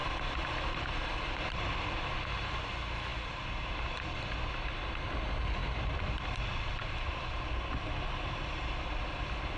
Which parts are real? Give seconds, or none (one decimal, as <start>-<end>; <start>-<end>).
1.9-3.1; 4.2-5.6; 7.7-9.6

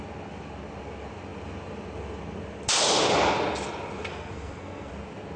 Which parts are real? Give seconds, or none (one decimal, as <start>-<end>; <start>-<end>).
0.0-4.1; 4.9-5.4

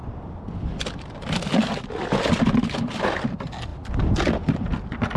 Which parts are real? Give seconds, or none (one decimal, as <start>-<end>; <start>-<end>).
0.0-5.2

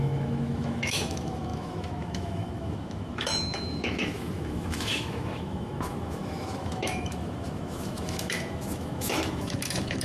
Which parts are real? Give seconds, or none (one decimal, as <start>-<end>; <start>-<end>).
none

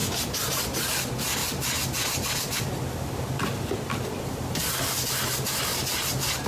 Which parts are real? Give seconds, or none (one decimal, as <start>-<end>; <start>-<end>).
0.0-6.5